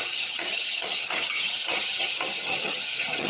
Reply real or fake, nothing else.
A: fake